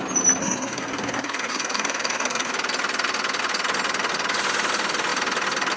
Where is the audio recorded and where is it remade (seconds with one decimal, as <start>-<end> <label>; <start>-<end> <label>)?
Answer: 0.0-0.4 recorded; 0.4-2.5 remade; 2.5-5.8 recorded